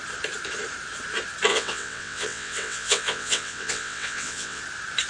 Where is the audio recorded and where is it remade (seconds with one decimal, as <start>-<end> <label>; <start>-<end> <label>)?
0.0-1.5 recorded; 1.5-4.6 remade; 4.6-5.1 recorded